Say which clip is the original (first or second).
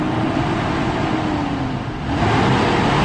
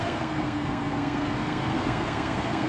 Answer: first